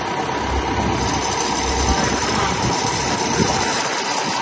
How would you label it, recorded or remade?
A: recorded